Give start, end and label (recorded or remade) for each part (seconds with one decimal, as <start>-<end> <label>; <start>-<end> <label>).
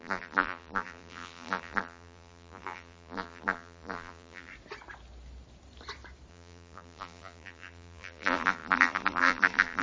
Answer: 0.0-4.5 remade; 4.5-6.3 recorded; 6.3-9.8 remade